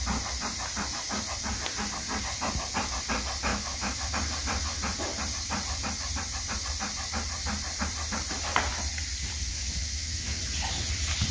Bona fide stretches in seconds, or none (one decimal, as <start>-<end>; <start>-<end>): 0.0-3.5; 4.1-9.5; 10.4-11.3